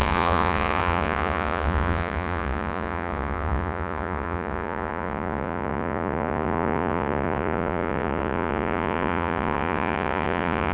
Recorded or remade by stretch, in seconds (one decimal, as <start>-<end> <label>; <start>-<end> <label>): 0.0-10.7 remade